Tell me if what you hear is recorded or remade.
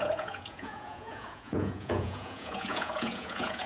remade